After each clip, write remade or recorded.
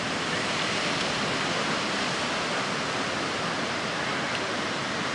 recorded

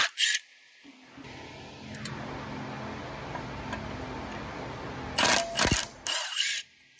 recorded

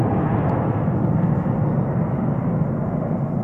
recorded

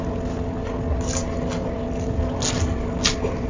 recorded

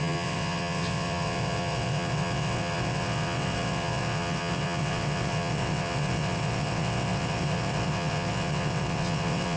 remade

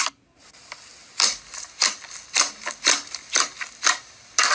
recorded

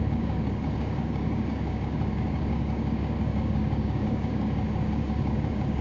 remade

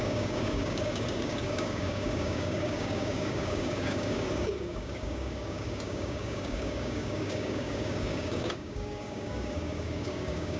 remade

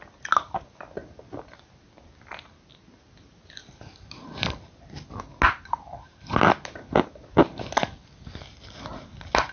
recorded